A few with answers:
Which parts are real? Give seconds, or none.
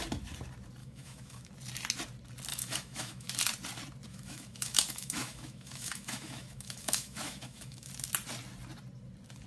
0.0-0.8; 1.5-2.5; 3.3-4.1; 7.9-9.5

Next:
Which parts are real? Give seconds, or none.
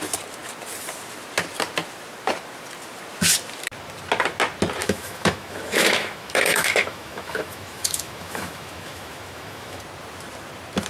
0.0-4.8; 9.8-10.9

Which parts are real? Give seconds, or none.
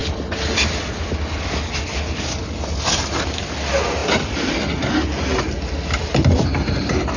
0.0-7.2